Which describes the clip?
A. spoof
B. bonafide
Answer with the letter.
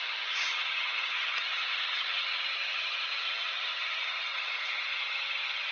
A